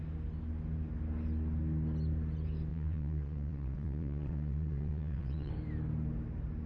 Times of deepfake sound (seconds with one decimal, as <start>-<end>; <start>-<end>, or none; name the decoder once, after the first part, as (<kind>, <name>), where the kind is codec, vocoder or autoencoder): 2.7-5.5 (vocoder, WaveNeXt)